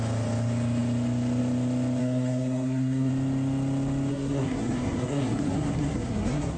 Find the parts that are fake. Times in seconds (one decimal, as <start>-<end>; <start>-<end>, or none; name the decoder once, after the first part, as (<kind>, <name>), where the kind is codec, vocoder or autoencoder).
2.0-3.1 (codec, SNAC); 4.1-6.6